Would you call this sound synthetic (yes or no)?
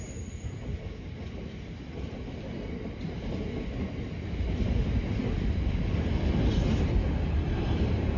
no